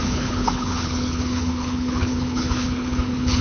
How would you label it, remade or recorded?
remade